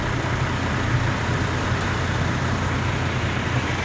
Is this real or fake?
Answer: fake